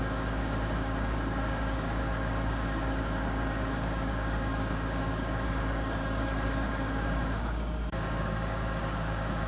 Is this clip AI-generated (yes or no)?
yes